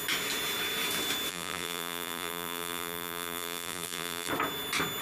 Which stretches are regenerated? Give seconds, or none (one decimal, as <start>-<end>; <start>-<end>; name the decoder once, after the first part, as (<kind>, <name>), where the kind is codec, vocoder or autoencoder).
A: 1.3-4.3 (vocoder, BigVGAN v2)